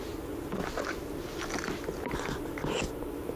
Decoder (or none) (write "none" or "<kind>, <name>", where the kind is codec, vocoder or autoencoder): none